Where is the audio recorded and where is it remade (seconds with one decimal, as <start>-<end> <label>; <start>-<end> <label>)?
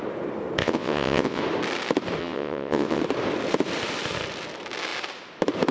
0.0-0.6 recorded; 0.6-1.4 remade; 1.4-2.2 recorded; 2.2-3.0 remade; 3.0-5.7 recorded